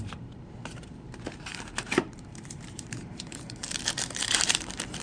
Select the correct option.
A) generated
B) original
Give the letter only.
A